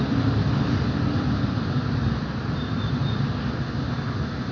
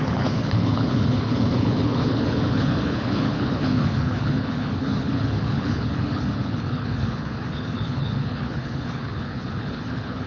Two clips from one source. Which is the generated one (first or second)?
second